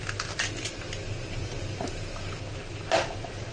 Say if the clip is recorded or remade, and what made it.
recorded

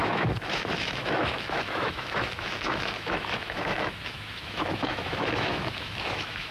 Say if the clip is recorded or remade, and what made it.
remade, autoencoder, DAC-VAE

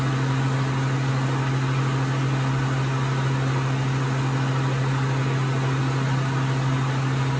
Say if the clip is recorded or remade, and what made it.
recorded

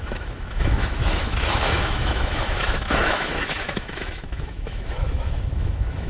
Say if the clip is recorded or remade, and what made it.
remade, autoencoder, DAC-VAE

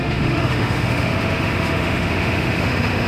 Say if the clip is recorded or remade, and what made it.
remade, autoencoder, DAC-VAE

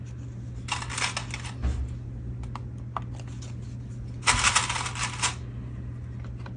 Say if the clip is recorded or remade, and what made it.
recorded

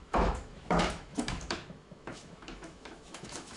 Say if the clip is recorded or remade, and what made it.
remade, autoencoder, DAC-VAE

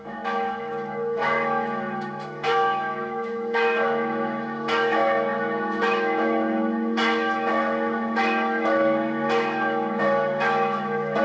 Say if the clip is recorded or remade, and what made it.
remade, autoencoder, DAC-VAE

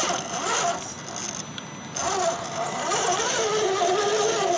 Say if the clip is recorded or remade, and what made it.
recorded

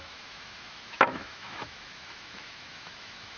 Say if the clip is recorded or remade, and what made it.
remade, autoencoder, DAC-VAE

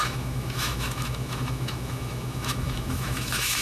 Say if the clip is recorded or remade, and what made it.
remade, autoencoder, DAC-VAE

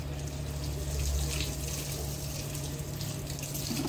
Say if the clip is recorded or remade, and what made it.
recorded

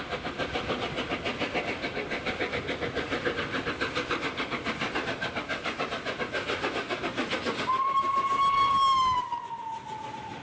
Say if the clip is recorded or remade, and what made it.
recorded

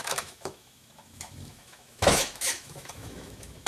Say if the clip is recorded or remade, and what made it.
remade, autoencoder, DAC-VAE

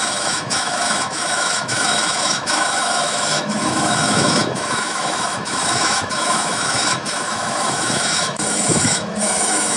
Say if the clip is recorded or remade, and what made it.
remade, autoencoder, DAC-VAE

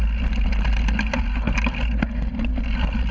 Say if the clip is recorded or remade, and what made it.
recorded